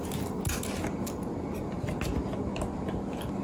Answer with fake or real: real